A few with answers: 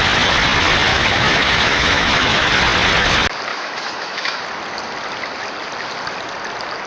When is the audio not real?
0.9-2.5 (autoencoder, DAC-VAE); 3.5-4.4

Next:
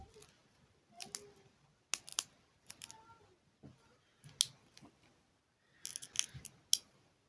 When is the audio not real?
2.1-2.8 (vocoder, BigVGAN v2)

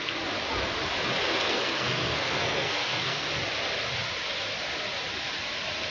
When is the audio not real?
1.3-3.3 (codec, SNAC)

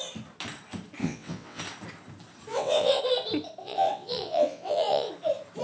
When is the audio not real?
1.0-1.6 (vocoder, WaveNeXt); 2.5-3.0; 3.6-5.1